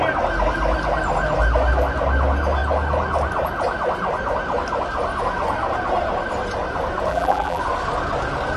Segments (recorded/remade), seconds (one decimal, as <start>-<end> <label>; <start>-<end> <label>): 0.0-7.1 recorded; 7.1-7.6 remade; 7.6-8.6 recorded